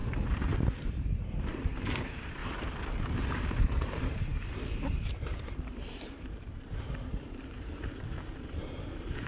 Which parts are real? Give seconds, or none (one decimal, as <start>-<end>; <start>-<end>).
0.0-0.9; 2.4-3.3